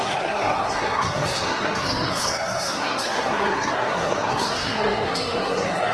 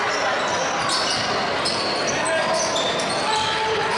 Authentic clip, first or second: second